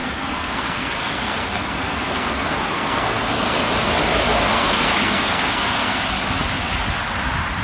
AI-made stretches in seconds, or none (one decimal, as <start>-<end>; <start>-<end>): 0.0-3.7; 4.5-6.0